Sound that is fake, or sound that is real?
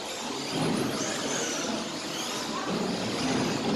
real